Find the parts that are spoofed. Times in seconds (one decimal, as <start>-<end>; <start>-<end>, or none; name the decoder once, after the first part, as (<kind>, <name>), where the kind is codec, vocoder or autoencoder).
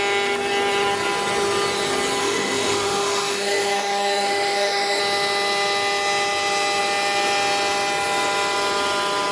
2.2-5.0 (autoencoder, DAC-VAE)